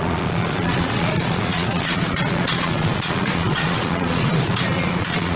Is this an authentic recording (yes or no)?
no